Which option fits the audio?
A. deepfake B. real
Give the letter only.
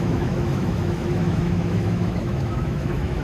A